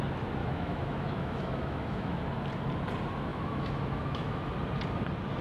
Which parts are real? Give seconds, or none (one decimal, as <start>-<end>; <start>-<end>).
0.0-0.4; 2.2-3.3; 4.5-5.4